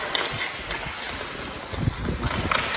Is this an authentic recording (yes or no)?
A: yes